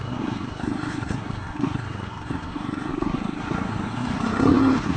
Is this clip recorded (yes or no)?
no